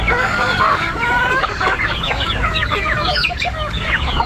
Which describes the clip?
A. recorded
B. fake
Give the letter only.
B